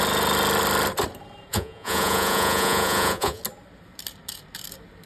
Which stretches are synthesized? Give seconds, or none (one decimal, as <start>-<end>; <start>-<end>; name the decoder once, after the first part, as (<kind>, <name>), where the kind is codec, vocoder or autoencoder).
1.5-3.4 (vocoder, Vocos)